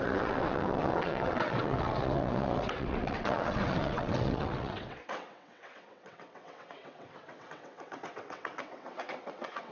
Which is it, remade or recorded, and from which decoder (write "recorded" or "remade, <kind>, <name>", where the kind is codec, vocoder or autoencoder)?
remade, vocoder, WaveNeXt